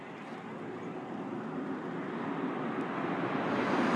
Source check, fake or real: real